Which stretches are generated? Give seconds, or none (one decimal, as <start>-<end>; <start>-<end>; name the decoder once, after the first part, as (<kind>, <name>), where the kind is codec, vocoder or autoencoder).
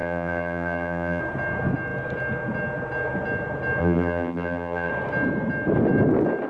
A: 0.0-1.2 (vocoder, BigVGAN v2); 3.8-4.9